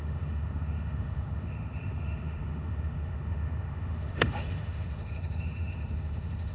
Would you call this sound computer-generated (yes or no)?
yes